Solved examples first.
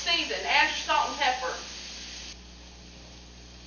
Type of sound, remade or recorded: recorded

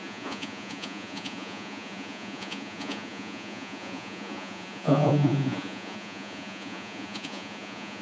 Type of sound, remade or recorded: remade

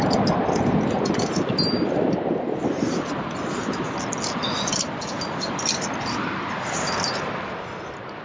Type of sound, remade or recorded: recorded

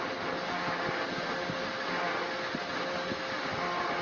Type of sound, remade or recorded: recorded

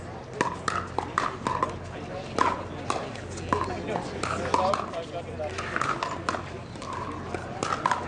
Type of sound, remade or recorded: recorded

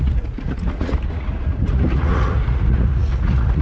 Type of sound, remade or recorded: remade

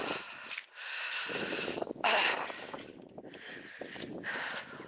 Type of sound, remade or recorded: recorded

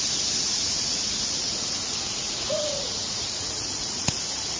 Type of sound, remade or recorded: remade